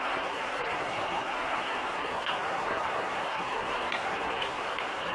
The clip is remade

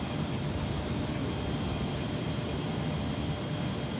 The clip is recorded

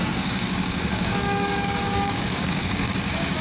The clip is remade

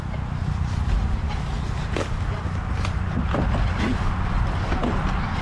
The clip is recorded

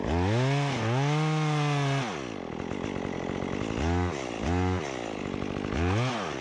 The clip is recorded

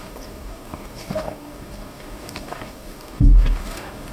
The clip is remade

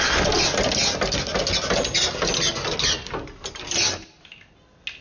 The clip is recorded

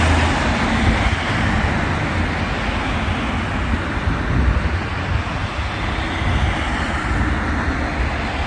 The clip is recorded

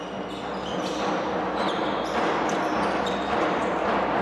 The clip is recorded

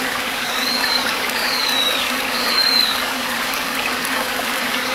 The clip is remade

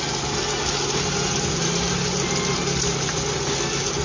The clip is recorded